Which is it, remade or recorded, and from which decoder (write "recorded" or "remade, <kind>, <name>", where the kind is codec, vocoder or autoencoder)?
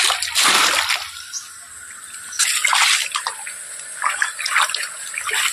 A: recorded